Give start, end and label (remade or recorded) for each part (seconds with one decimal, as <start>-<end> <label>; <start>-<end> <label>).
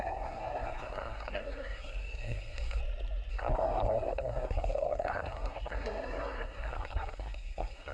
0.0-2.8 remade; 2.8-3.3 recorded; 3.3-7.9 remade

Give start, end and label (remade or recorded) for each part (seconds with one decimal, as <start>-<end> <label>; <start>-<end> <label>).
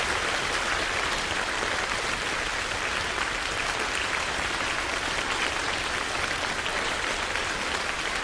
0.0-8.2 recorded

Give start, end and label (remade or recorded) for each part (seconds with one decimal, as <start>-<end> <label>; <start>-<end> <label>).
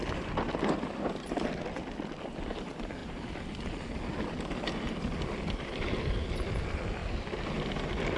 0.0-8.2 recorded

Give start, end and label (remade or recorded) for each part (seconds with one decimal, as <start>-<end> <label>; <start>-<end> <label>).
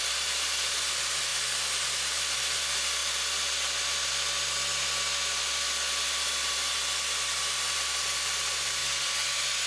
0.0-1.3 remade; 1.3-1.8 recorded; 1.8-3.0 remade; 3.0-6.2 recorded; 6.2-8.8 remade; 8.8-9.7 recorded